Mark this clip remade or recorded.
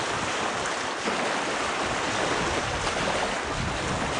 recorded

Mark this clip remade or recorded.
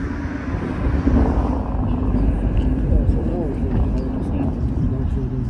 recorded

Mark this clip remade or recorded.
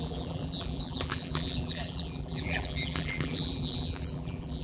remade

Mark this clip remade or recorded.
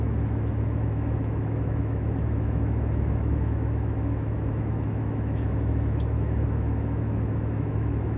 remade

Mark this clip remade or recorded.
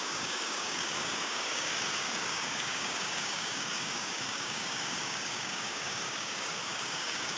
remade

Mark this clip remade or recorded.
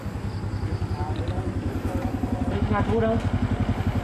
recorded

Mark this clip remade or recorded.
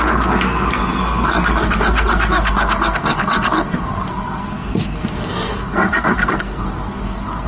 remade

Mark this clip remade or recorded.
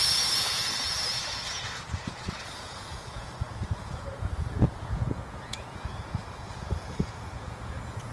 remade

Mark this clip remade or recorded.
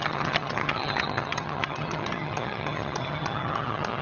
remade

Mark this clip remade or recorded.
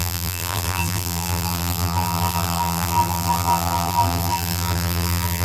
remade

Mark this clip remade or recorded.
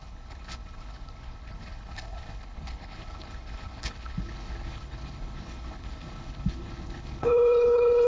remade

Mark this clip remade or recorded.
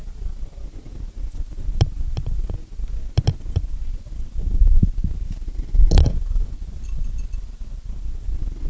recorded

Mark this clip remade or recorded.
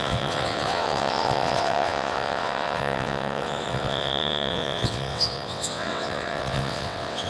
remade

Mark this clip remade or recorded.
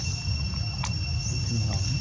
recorded